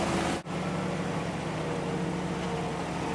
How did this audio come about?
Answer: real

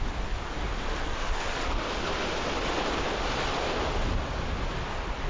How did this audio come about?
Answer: real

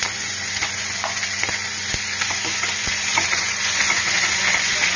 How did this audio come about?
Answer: fake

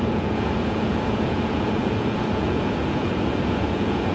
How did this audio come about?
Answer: fake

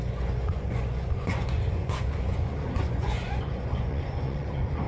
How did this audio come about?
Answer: fake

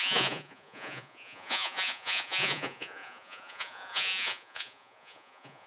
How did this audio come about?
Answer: fake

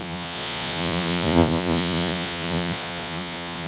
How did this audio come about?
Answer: fake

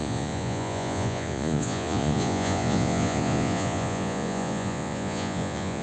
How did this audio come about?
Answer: fake